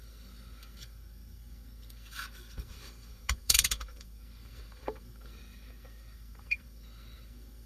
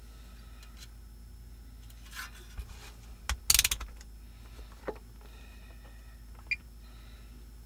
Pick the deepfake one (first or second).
first